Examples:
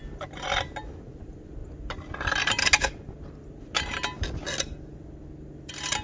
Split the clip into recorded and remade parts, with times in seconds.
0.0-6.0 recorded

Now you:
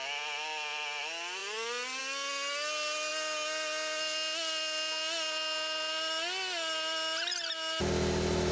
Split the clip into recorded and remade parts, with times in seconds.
0.0-8.5 recorded

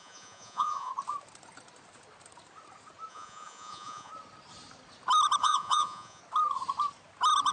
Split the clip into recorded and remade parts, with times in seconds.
0.0-0.9 remade; 0.9-3.1 recorded; 3.1-4.1 remade; 4.1-5.4 recorded; 5.4-6.2 remade; 6.2-7.5 recorded

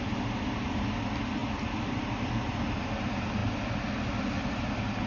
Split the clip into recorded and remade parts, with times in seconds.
0.0-5.1 recorded

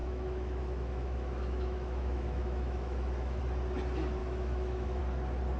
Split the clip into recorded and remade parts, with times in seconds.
0.0-3.4 remade; 3.4-4.2 recorded; 4.2-5.0 remade; 5.0-5.6 recorded

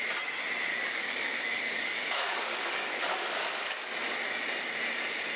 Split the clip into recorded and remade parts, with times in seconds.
0.0-0.7 recorded; 0.7-3.9 remade; 3.9-5.4 recorded

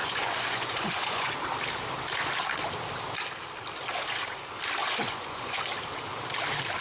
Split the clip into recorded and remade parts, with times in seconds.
0.0-1.3 remade; 1.3-4.8 recorded; 4.8-5.6 remade; 5.6-6.8 recorded

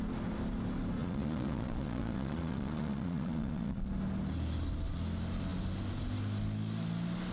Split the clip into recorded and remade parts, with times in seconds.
0.0-1.0 recorded; 1.0-3.9 remade; 3.9-7.3 recorded